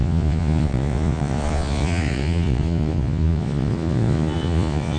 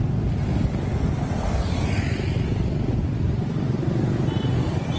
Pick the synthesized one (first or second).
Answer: first